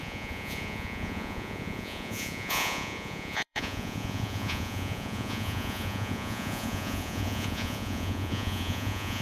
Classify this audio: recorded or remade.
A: remade